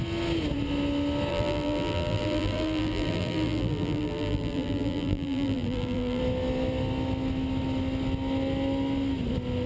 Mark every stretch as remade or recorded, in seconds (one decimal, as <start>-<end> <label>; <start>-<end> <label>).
0.0-1.3 recorded; 1.3-6.2 remade; 6.2-9.7 recorded